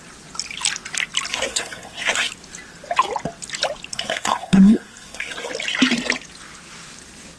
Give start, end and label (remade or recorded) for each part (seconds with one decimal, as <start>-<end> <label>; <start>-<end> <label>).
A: 0.0-1.3 recorded; 1.3-2.3 remade; 2.3-3.9 recorded; 3.9-5.5 remade; 5.5-7.4 recorded